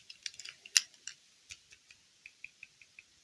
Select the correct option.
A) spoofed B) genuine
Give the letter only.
B